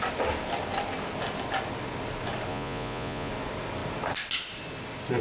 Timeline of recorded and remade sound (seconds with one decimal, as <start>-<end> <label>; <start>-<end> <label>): 0.0-2.5 recorded; 2.5-3.3 remade; 3.3-5.2 recorded